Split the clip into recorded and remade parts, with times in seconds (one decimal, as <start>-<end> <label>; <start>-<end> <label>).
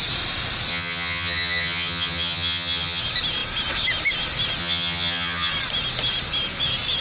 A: 0.0-0.7 recorded; 0.7-3.0 remade; 3.0-4.6 recorded; 4.6-5.5 remade; 5.5-7.0 recorded